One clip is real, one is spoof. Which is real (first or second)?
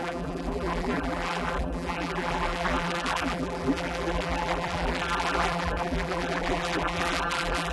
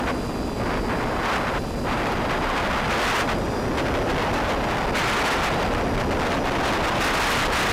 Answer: second